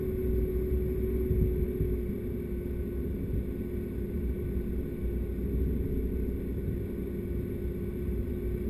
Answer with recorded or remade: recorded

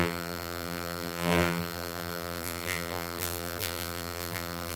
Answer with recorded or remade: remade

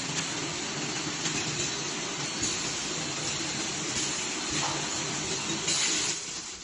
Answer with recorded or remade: recorded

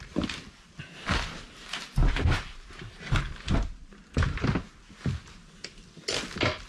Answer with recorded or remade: recorded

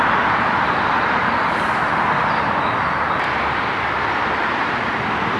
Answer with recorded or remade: remade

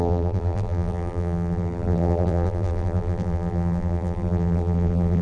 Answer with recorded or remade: remade